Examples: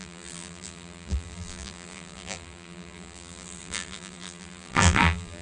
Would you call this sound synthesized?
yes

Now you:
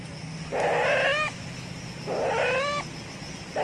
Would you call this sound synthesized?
no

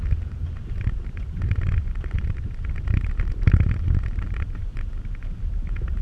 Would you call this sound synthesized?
yes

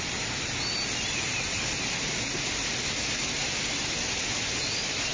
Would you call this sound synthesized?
no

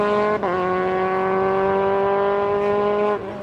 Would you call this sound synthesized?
no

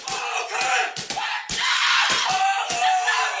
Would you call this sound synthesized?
no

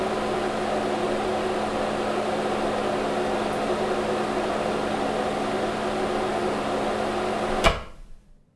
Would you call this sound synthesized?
no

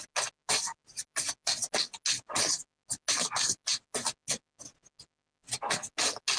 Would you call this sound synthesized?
no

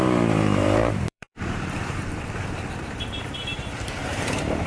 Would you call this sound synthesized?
yes